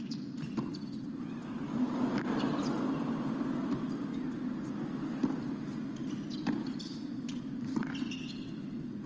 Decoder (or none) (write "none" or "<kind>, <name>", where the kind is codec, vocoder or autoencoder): none